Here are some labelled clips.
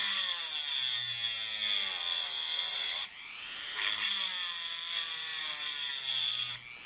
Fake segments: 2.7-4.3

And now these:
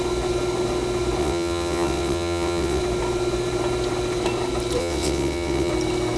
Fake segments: 1.2-2.8; 4.8-5.7

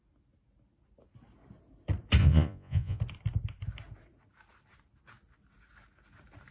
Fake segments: 2.2-3.0

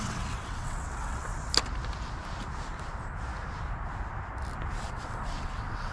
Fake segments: 0.0-1.3; 4.8-5.9

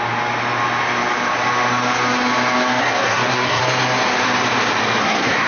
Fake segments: 2.8-3.6; 5.0-5.5

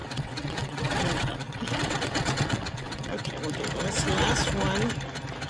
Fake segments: 0.0-3.3

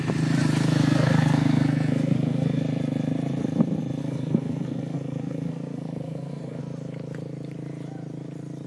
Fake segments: 0.8-2.6; 4.0-6.6

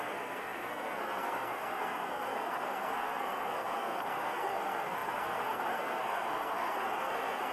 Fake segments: 0.0-7.5